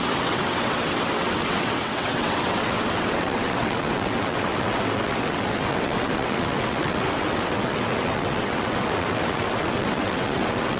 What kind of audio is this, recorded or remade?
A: remade